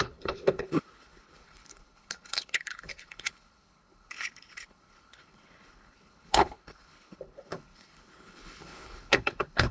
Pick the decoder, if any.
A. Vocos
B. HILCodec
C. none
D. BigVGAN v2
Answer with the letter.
B